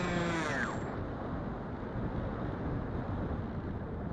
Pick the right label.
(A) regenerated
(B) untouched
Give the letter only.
B